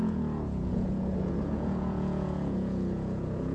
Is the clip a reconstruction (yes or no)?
yes